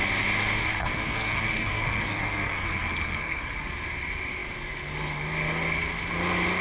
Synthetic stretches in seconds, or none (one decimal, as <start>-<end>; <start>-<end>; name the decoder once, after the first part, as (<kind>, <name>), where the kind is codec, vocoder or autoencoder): 0.6-3.4 (codec, SNAC)